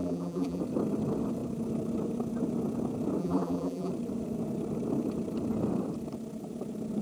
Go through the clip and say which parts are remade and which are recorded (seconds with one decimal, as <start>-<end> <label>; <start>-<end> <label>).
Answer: 0.0-0.6 remade; 0.6-3.2 recorded; 3.2-3.9 remade; 3.9-7.0 recorded